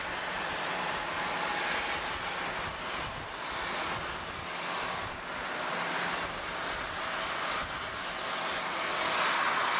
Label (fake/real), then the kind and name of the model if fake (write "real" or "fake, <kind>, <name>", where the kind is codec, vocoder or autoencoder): real